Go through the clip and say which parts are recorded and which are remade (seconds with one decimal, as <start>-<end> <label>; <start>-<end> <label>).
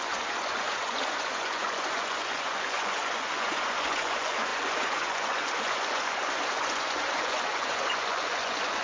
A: 0.0-8.8 remade